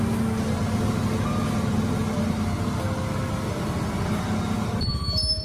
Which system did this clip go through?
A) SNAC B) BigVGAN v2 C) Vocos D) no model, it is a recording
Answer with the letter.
D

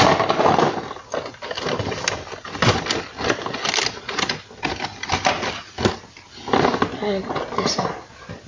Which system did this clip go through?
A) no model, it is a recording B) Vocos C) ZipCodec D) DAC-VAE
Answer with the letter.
A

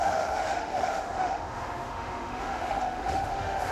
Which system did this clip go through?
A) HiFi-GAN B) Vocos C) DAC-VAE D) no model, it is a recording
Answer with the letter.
C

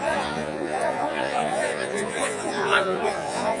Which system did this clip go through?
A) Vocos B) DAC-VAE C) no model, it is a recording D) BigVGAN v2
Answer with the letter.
A